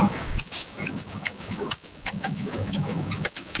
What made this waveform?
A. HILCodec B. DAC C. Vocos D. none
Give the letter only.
B